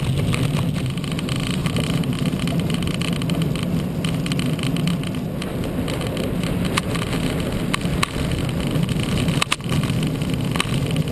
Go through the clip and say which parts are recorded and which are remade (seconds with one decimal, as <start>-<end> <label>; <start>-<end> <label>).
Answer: 0.0-1.6 recorded; 1.6-2.9 remade; 2.9-11.1 recorded